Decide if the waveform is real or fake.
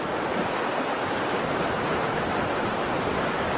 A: real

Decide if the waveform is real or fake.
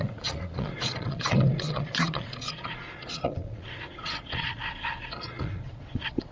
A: fake